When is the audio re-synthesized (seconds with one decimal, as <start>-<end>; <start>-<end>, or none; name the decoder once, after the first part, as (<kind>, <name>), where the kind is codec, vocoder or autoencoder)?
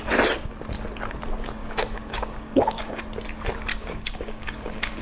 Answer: 1.6-3.0 (codec, DAC); 3.7-5.0